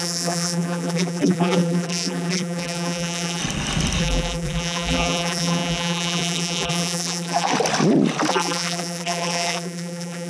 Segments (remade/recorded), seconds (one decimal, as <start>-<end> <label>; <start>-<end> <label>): 0.0-3.4 remade; 3.4-4.0 recorded; 4.0-7.5 remade; 7.5-8.3 recorded; 8.3-10.3 remade

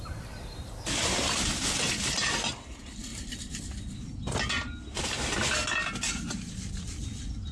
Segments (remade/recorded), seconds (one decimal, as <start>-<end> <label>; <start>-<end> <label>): 0.0-3.1 recorded; 3.1-3.7 remade; 3.7-6.1 recorded; 6.1-7.0 remade; 7.0-7.5 recorded